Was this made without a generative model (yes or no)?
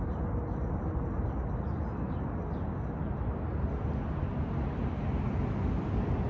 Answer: yes